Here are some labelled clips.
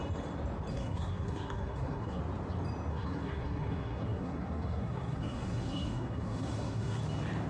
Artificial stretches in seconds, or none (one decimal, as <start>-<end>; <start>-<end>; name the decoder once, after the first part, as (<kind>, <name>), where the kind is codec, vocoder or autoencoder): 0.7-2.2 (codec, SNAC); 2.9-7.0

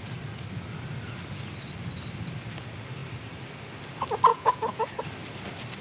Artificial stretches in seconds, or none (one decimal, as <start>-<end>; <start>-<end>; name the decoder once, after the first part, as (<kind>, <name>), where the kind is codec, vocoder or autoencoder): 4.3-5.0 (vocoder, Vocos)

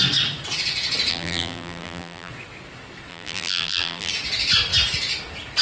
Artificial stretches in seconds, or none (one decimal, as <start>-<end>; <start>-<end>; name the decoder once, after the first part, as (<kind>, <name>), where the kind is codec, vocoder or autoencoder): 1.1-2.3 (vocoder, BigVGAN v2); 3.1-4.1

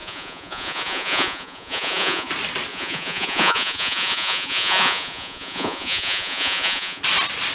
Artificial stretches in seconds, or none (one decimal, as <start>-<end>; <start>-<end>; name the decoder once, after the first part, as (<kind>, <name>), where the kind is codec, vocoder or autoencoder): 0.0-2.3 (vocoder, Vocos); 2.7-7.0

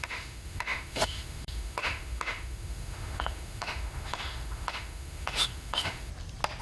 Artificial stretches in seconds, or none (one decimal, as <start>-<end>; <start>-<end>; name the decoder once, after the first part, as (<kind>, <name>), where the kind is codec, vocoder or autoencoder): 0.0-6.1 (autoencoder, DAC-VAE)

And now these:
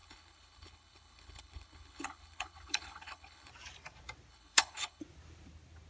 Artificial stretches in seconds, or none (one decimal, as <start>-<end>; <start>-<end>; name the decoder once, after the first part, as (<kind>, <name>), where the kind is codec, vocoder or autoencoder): 0.0-3.5 (codec, HILCodec); 4.3-5.0